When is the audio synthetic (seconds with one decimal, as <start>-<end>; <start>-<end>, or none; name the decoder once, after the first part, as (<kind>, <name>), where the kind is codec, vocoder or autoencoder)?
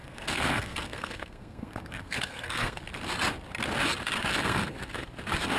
0.0-2.8 (codec, SNAC); 4.3-5.1